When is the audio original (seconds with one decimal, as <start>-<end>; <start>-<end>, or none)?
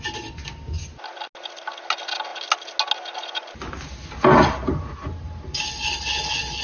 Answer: 0.0-6.6